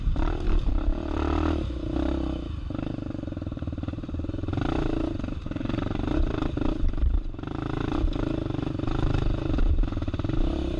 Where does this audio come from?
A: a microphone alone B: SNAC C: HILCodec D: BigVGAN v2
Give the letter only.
D